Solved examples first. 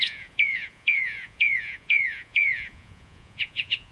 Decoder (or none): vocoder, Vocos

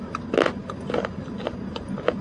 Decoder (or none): none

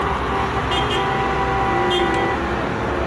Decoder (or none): none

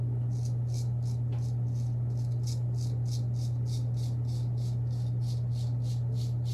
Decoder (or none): none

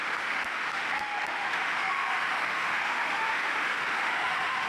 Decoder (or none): autoencoder, DAC-VAE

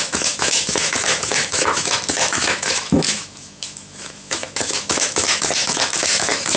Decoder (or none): autoencoder, DAC-VAE